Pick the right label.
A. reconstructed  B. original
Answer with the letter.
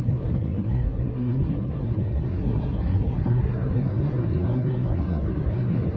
A